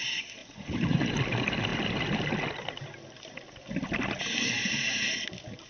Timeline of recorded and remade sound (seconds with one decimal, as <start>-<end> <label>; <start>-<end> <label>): 0.0-0.4 recorded; 0.4-1.1 remade; 1.1-5.7 recorded